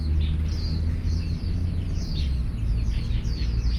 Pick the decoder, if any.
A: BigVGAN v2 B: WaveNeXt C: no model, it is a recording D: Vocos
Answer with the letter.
C